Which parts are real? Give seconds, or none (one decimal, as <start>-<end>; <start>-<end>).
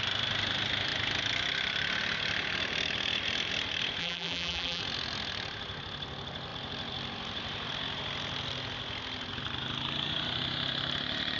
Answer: 0.0-4.0; 4.8-11.4